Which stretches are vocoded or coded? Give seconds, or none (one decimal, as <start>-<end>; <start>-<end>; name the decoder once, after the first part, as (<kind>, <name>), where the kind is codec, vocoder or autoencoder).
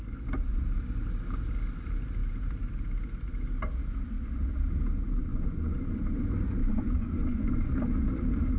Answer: 5.2-6.0 (vocoder, Vocos); 6.6-7.7